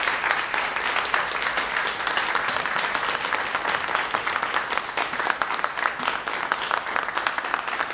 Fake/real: real